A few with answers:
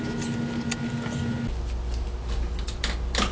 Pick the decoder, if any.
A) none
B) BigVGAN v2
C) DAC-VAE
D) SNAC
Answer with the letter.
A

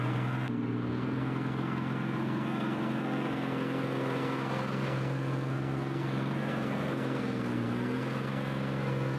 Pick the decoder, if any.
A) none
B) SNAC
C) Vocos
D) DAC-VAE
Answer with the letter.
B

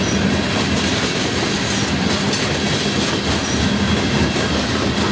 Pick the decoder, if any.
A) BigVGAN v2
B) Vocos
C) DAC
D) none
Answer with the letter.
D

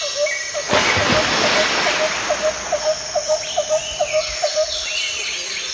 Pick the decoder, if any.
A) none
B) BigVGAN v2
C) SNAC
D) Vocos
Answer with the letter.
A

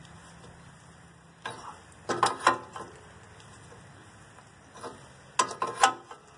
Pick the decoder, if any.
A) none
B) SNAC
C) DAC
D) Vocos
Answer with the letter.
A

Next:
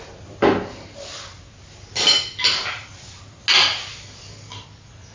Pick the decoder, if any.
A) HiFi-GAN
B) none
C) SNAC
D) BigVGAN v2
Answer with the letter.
B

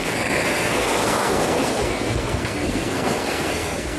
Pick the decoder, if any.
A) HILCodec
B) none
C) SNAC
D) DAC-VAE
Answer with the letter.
C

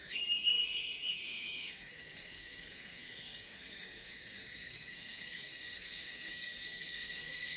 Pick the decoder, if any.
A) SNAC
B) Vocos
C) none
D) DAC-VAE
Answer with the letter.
A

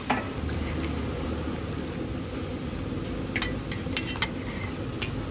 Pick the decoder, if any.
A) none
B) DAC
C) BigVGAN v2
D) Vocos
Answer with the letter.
A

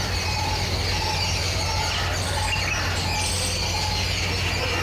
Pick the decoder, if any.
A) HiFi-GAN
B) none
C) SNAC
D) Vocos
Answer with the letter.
B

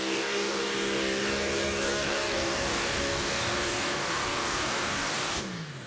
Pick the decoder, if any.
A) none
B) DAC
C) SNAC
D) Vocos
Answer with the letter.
B